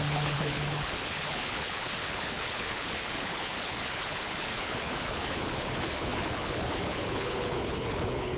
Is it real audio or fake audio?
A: fake